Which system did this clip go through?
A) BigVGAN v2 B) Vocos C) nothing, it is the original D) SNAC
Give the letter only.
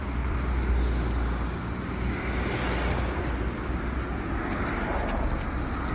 C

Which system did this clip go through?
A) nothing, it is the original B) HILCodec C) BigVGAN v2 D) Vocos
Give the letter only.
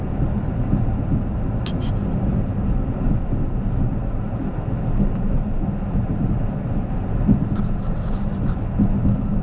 A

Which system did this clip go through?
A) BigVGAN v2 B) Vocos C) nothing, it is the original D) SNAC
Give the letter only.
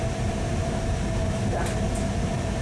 C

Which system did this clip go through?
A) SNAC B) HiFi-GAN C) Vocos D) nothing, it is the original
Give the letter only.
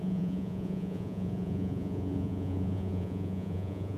C